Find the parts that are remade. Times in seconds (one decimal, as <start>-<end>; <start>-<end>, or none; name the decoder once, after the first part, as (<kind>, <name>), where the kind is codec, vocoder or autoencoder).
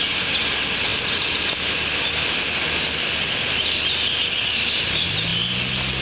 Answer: none